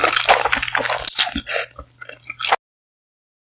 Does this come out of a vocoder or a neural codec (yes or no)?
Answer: no